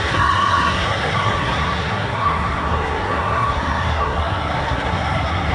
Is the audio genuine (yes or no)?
no